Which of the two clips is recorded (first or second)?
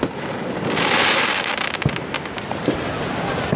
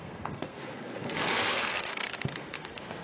first